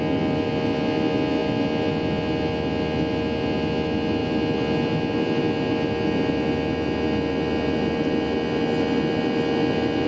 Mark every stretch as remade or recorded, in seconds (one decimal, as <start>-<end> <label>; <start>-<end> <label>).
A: 0.0-10.1 recorded